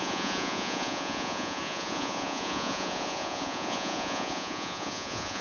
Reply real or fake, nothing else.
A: fake